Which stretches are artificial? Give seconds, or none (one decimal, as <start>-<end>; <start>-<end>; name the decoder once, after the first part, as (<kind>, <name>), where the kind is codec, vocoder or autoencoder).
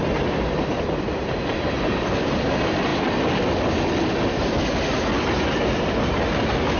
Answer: none